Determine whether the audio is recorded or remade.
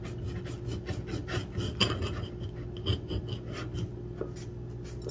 recorded